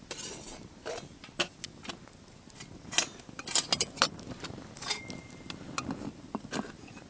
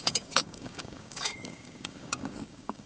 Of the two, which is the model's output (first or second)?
second